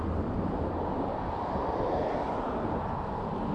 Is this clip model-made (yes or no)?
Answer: no